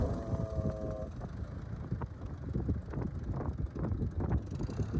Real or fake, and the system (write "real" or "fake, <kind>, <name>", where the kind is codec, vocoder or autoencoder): real